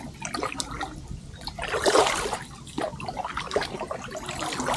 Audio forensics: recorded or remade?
recorded